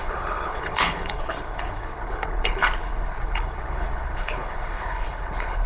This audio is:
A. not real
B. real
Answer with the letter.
A